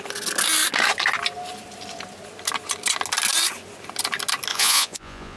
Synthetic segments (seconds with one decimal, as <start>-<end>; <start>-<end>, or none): 4.5-5.4